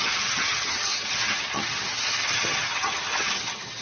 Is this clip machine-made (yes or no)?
yes